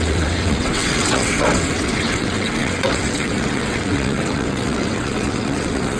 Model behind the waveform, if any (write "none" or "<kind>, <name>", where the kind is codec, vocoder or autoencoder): vocoder, WaveNeXt